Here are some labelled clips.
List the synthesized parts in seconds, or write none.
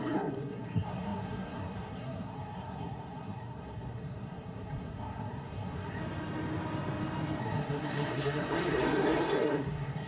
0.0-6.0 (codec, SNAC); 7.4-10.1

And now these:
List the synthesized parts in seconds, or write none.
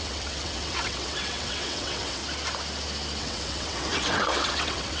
0.0-2.2 (vocoder, WaveNeXt); 3.2-5.0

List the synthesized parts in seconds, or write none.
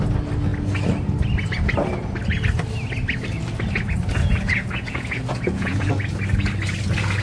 4.2-5.9 (vocoder, Vocos)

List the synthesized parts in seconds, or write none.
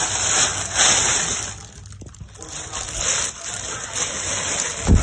none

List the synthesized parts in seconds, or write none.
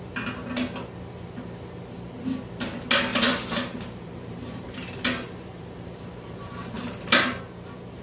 3.1-7.4 (vocoder, BigVGAN v2)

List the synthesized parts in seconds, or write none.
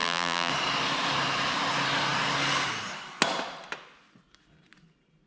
0.0-0.5 (vocoder, BigVGAN v2)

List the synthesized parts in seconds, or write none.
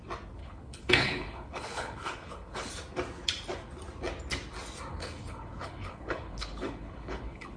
0.4-2.7 (codec, HILCodec); 4.9-7.6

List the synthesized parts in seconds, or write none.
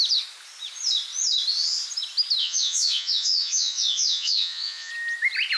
2.4-4.9 (vocoder, Vocos)